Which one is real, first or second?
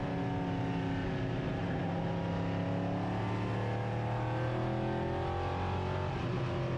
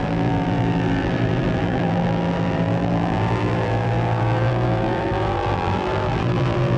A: first